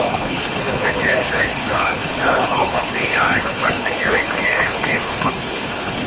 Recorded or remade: remade